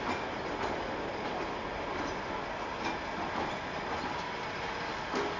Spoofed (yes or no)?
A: no